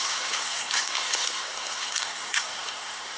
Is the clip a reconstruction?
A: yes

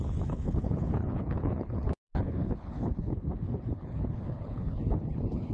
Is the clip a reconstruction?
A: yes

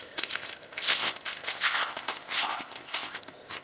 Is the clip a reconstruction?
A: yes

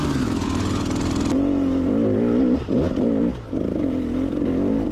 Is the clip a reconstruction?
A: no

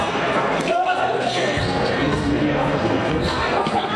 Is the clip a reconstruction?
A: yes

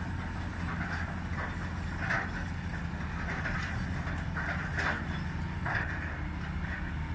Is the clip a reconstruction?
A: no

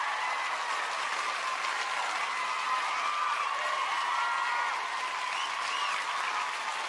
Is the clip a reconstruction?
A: no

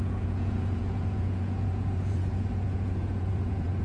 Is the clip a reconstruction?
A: yes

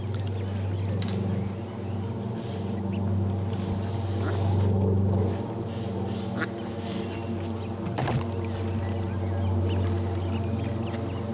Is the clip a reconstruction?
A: no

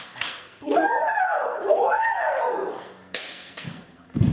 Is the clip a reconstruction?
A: yes